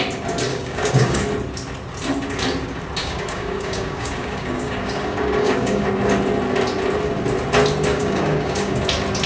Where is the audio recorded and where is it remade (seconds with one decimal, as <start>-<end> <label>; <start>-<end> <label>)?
0.0-0.5 recorded; 0.5-1.2 remade; 1.2-3.0 recorded; 3.0-5.8 remade; 5.8-7.9 recorded; 7.9-8.8 remade; 8.8-9.3 recorded